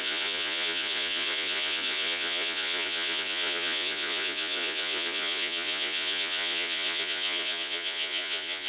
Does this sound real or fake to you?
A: fake